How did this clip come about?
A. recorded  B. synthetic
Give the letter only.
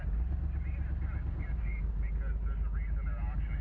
A